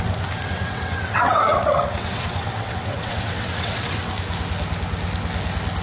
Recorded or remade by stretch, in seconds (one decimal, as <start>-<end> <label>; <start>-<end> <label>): 0.0-0.4 recorded; 0.4-3.9 remade; 3.9-5.8 recorded